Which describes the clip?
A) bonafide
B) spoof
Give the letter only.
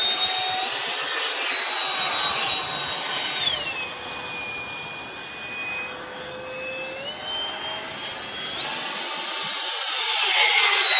A